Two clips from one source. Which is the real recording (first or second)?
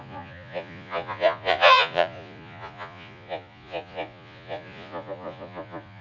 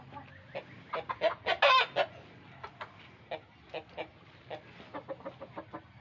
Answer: second